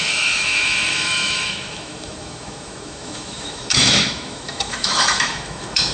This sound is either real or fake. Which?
fake